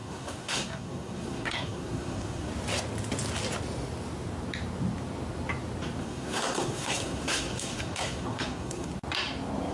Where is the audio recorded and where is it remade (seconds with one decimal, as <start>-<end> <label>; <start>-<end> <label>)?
0.0-2.5 remade; 2.5-6.0 recorded; 6.0-8.9 remade; 8.9-9.7 recorded